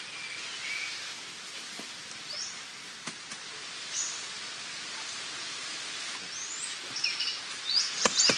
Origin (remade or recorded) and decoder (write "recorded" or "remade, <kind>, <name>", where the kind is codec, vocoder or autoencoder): recorded